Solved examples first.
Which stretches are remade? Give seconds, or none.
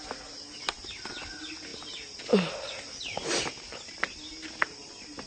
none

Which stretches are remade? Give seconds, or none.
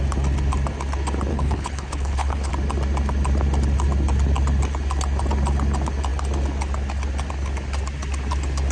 1.3-2.5